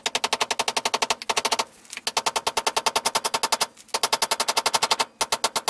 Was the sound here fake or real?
real